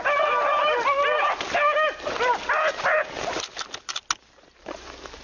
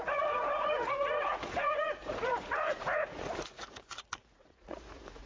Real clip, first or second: first